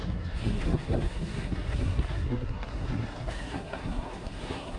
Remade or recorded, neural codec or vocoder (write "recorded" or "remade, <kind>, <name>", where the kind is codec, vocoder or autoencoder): remade, codec, SNAC